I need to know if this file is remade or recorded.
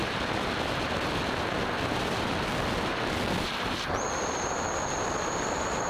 recorded